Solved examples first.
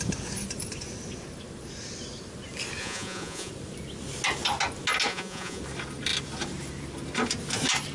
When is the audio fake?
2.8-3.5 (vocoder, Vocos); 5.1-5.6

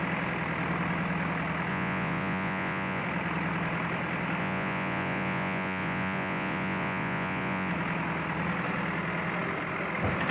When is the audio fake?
1.7-3.0 (vocoder, Vocos); 4.4-7.7

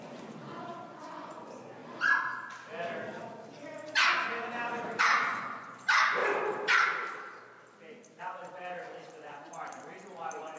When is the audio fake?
0.0-1.8 (vocoder, Vocos); 5.0-6.2; 8.2-10.6

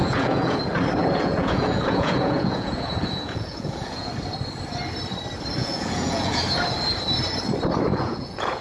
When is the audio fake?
0.0-0.6 (vocoder, Vocos); 1.0-4.1; 5.6-6.4; 7.9-8.6

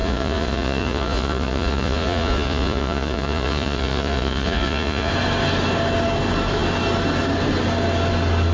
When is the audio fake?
0.0-5.1 (vocoder, Vocos)

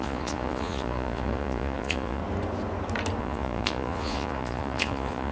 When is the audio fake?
0.0-2.2 (vocoder, Vocos); 3.2-5.3